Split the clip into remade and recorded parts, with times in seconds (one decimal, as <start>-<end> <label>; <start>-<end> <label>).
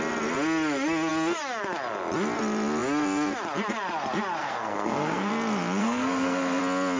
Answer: 0.0-4.4 recorded; 4.4-5.3 remade; 5.3-5.8 recorded; 5.8-6.6 remade; 6.6-7.0 recorded